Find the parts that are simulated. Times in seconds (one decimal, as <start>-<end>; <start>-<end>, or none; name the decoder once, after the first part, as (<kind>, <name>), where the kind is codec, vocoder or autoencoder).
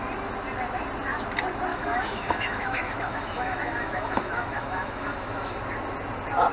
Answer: 1.7-5.6 (autoencoder, DAC-VAE)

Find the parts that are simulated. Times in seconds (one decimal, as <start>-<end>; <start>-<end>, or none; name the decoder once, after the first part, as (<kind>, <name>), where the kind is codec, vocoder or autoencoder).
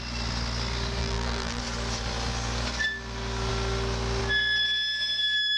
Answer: 1.0-1.6 (vocoder, BigVGAN v2)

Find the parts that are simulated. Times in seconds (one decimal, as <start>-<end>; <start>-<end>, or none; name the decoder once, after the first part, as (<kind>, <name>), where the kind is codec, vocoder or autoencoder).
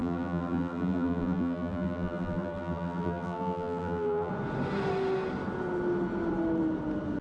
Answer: 0.0-4.3 (vocoder, BigVGAN v2)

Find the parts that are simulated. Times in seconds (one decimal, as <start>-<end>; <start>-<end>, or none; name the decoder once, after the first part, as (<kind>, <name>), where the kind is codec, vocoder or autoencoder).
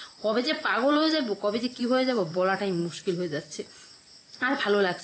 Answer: 0.0-1.2 (vocoder, Vocos); 1.8-2.8; 4.6-5.0